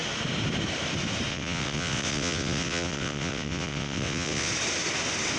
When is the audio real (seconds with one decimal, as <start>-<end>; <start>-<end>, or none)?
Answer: 0.0-1.3; 4.5-5.4